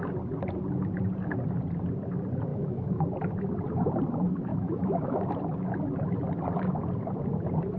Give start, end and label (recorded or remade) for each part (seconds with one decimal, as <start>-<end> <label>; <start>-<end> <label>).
0.0-2.5 recorded; 2.5-3.0 remade; 3.0-4.5 recorded; 4.5-5.3 remade; 5.3-7.8 recorded